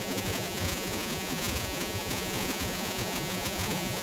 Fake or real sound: fake